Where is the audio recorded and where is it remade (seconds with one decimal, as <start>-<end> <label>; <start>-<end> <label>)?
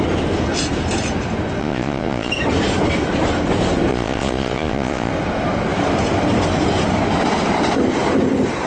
0.0-1.6 recorded; 1.6-2.3 remade; 2.3-3.9 recorded; 3.9-5.1 remade; 5.1-8.7 recorded